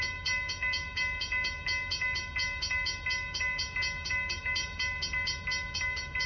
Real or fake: real